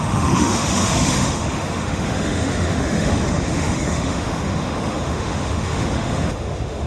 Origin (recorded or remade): remade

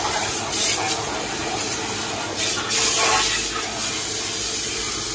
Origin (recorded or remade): recorded